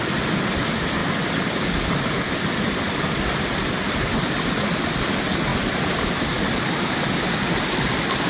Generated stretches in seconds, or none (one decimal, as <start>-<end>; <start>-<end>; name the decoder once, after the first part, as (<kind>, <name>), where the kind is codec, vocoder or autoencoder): none